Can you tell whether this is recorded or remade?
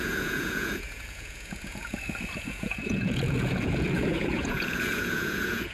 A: remade